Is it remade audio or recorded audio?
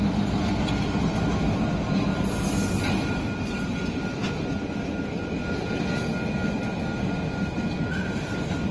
recorded